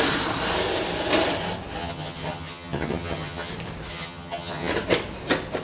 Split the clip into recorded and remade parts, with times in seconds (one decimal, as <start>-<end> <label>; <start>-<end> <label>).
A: 0.0-1.8 recorded; 1.8-3.5 remade; 3.5-3.9 recorded; 3.9-4.7 remade; 4.7-5.6 recorded